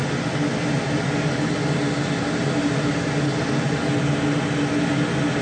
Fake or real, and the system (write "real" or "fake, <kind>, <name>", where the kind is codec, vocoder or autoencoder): real